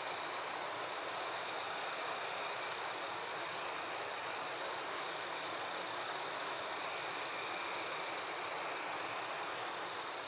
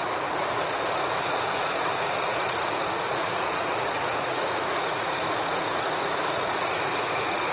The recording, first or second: first